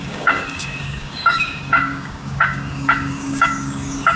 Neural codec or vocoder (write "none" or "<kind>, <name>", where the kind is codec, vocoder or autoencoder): codec, DAC